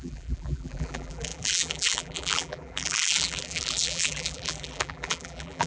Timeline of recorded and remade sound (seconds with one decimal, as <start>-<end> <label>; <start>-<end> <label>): 0.0-5.7 remade